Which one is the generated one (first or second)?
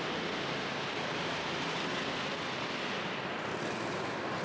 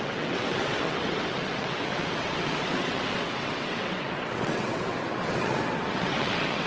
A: second